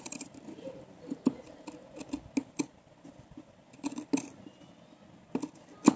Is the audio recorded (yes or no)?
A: yes